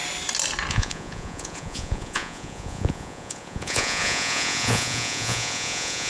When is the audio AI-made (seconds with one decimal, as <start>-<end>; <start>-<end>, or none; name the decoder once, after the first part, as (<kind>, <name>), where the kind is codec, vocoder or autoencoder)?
0.7-6.1 (vocoder, Vocos)